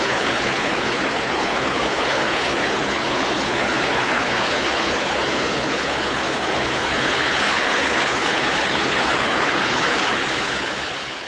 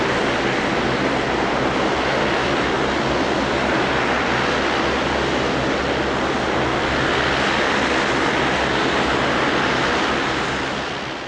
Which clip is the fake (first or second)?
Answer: first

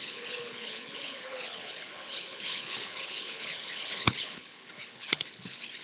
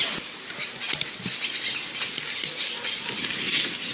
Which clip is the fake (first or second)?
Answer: first